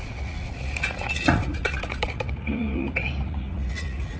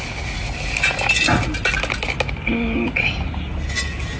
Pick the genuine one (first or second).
second